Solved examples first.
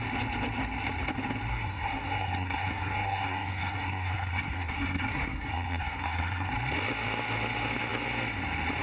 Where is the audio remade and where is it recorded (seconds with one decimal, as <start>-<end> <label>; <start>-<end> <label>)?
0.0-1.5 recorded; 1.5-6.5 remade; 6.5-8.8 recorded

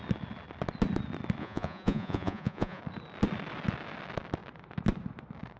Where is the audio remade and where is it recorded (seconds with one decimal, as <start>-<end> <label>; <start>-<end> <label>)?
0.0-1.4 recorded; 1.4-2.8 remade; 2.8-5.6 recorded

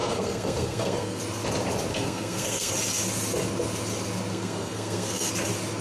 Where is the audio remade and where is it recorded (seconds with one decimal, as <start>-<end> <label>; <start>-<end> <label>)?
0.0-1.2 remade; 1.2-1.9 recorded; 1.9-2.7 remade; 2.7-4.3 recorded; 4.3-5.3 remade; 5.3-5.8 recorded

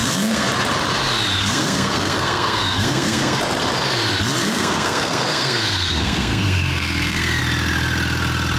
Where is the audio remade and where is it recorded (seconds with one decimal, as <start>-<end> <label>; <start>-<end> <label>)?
0.0-0.5 remade; 0.5-1.4 recorded; 1.4-3.4 remade; 3.4-4.4 recorded; 4.4-7.4 remade; 7.4-8.6 recorded